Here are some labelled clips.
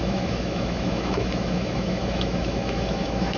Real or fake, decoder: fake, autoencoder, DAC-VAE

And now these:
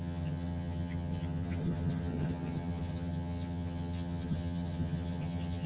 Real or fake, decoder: fake, vocoder, HiFi-GAN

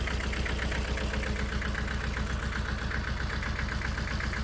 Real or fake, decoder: real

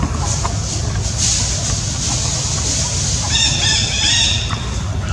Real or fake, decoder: real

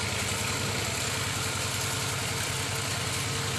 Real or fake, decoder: real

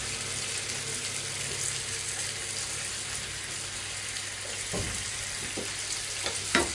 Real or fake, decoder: real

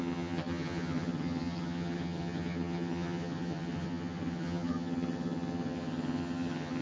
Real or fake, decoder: fake, vocoder, HiFi-GAN